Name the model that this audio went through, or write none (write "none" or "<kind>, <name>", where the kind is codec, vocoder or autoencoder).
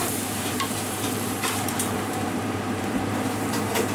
vocoder, BigVGAN v2